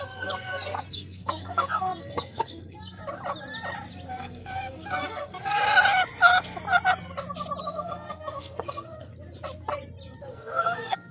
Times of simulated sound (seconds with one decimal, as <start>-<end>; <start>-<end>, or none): 0.0-3.0; 4.1-5.6; 7.6-9.1; 10.2-11.1